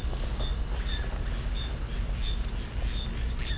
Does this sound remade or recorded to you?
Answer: recorded